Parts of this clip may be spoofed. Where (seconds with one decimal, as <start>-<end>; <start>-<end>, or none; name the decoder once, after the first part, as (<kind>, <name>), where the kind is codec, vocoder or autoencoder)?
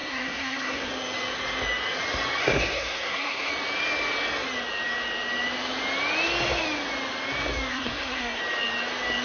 0.0-0.9 (codec, SNAC); 2.4-3.5; 7.7-8.4